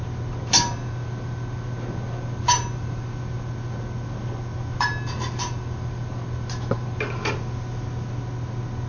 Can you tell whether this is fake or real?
real